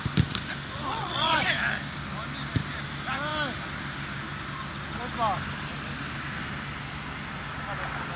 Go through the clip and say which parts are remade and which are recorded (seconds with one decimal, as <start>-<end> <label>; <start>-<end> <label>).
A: 0.0-0.9 recorded; 0.9-1.5 remade; 1.5-8.2 recorded